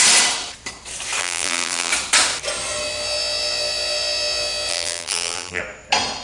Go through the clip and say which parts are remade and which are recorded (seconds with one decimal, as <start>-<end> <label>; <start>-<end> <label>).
0.0-1.2 recorded; 1.2-1.9 remade; 1.9-4.7 recorded; 4.7-5.6 remade; 5.6-6.2 recorded